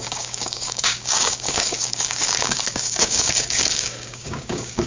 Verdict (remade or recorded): remade